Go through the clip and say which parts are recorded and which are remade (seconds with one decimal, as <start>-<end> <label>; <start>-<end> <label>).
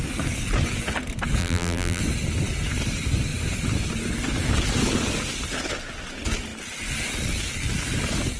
0.0-1.4 recorded; 1.4-2.0 remade; 2.0-8.4 recorded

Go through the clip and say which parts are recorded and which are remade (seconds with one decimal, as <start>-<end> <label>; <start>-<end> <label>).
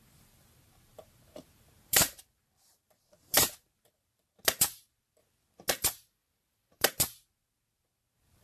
0.0-5.2 remade; 5.2-5.7 recorded; 5.7-8.4 remade